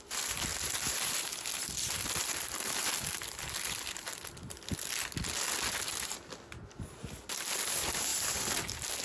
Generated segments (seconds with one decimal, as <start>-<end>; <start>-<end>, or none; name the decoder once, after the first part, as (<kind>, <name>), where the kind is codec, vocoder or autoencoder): 0.5-4.1 (vocoder, BigVGAN v2)